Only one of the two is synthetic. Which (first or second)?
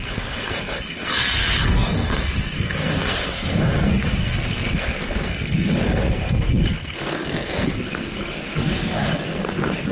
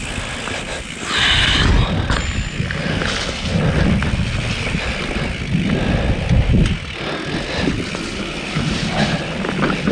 first